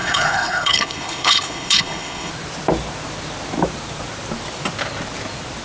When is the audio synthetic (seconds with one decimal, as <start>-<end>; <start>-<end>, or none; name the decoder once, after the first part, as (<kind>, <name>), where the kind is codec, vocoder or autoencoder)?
0.0-2.3 (codec, HILCodec)